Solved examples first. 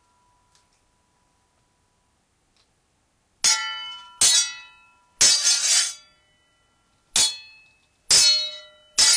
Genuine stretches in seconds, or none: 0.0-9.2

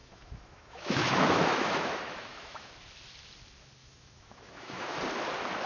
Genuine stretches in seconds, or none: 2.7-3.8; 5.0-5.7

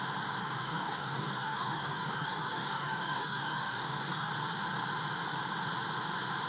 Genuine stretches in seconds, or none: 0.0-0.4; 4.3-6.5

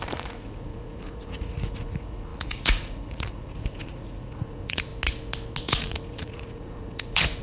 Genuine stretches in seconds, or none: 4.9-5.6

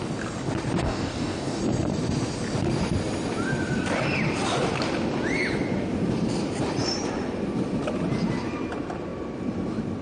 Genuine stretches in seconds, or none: 0.0-0.8; 1.6-10.0

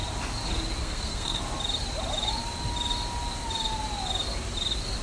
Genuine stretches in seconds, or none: 0.0-0.8; 1.4-5.0